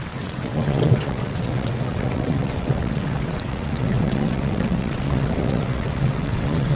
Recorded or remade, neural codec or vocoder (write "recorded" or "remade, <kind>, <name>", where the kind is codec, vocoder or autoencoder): remade, vocoder, WaveNeXt